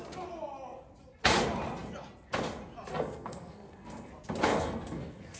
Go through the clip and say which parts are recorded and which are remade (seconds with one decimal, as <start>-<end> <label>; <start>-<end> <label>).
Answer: 0.0-2.9 recorded; 2.9-4.1 remade; 4.1-4.5 recorded; 4.5-5.4 remade